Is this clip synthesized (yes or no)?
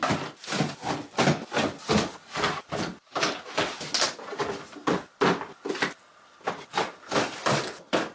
no